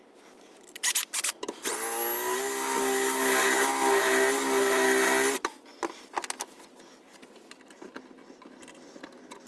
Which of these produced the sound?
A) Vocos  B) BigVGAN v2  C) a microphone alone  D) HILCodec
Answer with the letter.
C